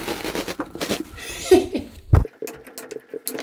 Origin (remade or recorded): recorded